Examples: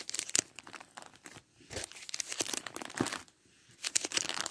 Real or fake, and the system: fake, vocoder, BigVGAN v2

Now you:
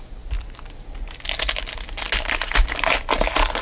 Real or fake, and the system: real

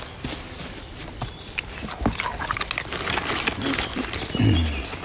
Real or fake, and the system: real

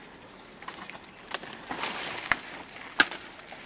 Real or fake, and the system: real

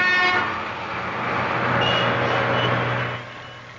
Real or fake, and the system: real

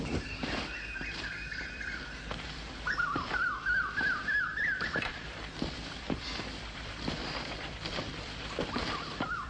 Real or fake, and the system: fake, vocoder, BigVGAN v2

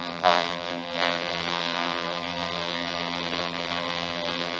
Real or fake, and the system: fake, vocoder, BigVGAN v2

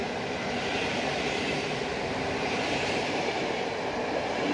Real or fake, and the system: fake, vocoder, BigVGAN v2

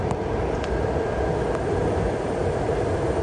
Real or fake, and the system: fake, vocoder, BigVGAN v2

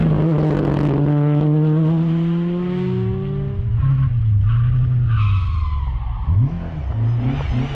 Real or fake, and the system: real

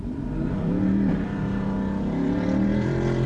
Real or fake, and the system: fake, vocoder, BigVGAN v2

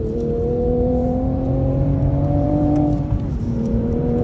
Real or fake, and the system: fake, vocoder, BigVGAN v2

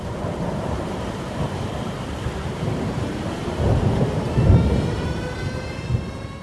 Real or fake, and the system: fake, vocoder, BigVGAN v2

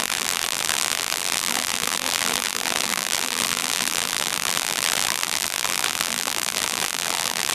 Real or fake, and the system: fake, vocoder, BigVGAN v2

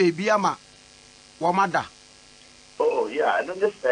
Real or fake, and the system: fake, vocoder, BigVGAN v2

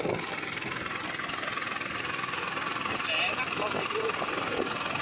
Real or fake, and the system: real